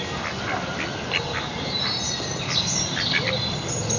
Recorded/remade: recorded